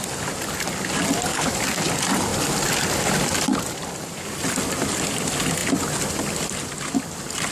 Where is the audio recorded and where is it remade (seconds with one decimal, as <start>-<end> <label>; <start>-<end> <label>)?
0.0-1.3 recorded; 1.3-1.8 remade; 1.8-7.5 recorded